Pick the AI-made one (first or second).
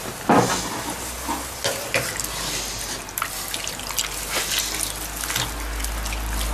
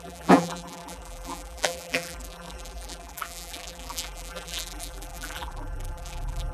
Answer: second